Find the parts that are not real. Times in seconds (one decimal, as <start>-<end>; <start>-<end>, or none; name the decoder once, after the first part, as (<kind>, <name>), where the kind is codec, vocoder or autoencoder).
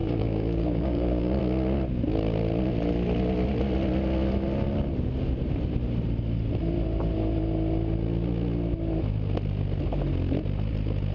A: 0.0-1.4 (codec, DAC)